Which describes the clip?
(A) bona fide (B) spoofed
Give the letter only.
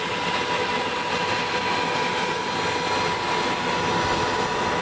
A